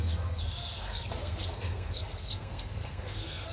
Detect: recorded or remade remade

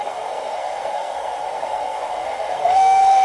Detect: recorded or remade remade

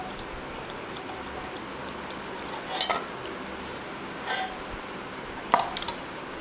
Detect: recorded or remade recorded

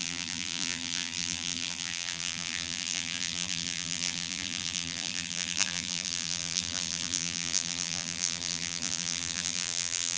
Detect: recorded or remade remade